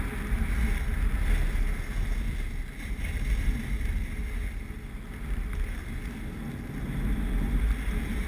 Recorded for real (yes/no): yes